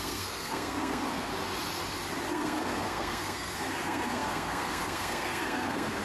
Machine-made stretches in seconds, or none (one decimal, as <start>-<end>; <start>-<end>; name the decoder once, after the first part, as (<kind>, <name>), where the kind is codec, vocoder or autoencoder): 0.0-1.3 (codec, SNAC); 2.3-6.0